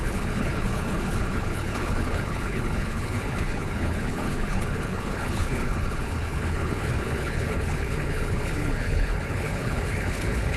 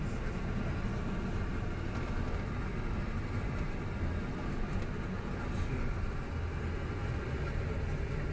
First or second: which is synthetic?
first